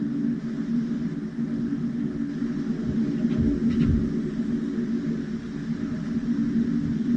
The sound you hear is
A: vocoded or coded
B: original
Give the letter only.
B